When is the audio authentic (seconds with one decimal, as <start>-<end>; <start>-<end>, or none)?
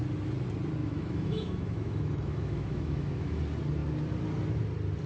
0.0-0.8; 3.4-5.1